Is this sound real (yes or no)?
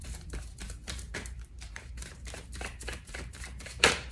no